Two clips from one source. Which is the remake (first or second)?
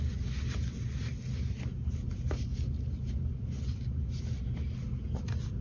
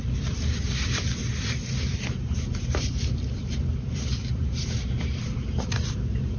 second